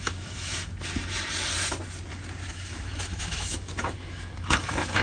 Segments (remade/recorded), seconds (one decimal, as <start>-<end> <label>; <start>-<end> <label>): 0.0-0.7 remade; 0.7-2.5 recorded; 2.5-5.0 remade